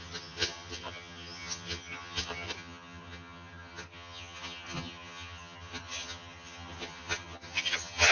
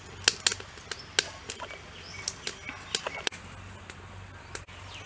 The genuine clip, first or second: second